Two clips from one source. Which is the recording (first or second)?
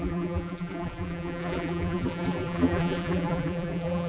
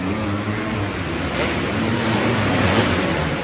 second